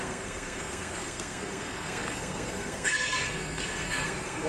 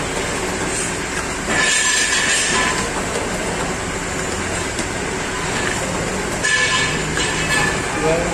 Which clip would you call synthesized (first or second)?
first